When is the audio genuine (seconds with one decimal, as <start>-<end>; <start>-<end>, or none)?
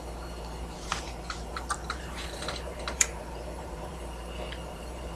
none